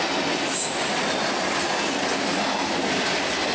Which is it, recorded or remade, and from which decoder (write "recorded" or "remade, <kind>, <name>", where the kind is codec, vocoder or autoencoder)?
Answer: recorded